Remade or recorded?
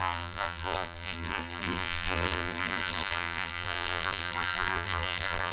remade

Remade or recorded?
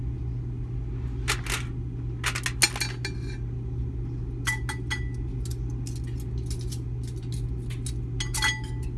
recorded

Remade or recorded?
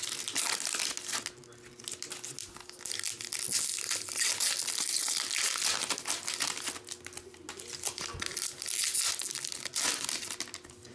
recorded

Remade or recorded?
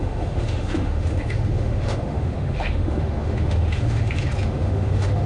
remade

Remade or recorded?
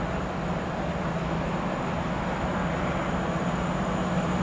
recorded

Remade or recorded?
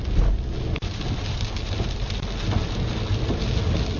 recorded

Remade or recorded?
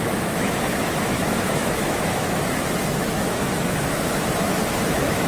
remade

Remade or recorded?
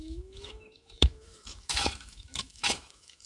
remade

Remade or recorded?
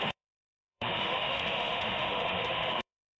remade